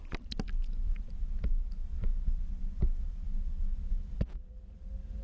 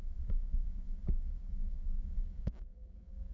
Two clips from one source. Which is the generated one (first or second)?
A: second